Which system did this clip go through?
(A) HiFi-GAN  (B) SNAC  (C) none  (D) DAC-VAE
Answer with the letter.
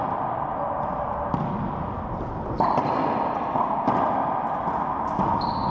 C